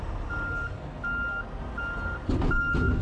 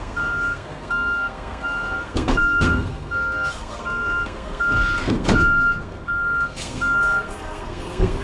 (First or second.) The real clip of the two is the first